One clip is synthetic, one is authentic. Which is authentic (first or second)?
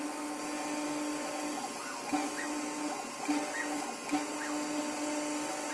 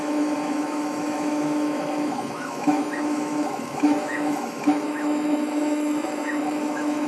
first